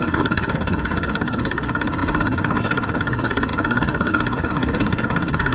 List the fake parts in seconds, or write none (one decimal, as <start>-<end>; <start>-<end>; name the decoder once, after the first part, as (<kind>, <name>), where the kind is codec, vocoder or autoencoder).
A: 0.0-5.5 (codec, SNAC)